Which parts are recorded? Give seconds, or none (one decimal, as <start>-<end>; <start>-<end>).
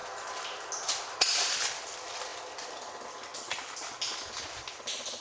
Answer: 0.0-5.2